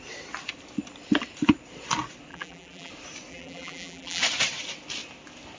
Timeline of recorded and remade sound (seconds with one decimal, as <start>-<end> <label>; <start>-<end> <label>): 0.0-2.3 recorded; 2.3-2.9 remade; 2.9-3.3 recorded; 3.3-4.2 remade; 4.2-5.6 recorded